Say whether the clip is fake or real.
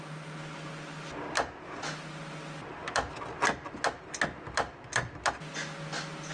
real